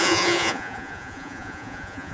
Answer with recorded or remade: remade